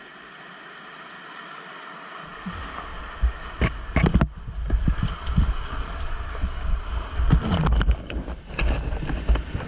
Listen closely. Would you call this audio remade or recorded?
recorded